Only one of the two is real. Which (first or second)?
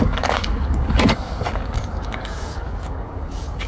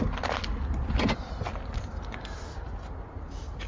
second